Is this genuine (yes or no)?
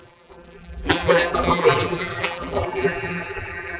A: no